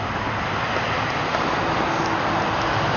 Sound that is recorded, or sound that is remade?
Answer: recorded